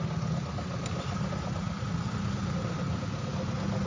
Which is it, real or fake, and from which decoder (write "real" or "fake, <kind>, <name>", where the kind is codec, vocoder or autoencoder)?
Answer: real